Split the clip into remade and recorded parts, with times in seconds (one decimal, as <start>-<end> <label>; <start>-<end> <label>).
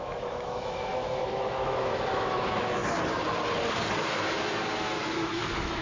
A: 0.0-2.8 remade; 2.8-4.0 recorded; 4.0-5.8 remade